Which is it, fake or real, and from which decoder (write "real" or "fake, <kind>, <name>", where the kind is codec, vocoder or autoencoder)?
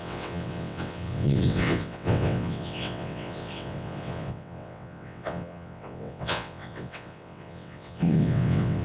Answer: fake, vocoder, WaveNeXt